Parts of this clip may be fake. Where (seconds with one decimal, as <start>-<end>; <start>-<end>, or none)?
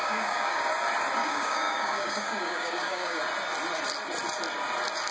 0.0-0.6; 1.2-3.2